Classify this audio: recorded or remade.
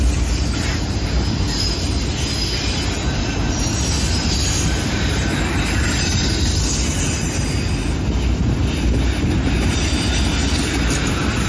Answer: recorded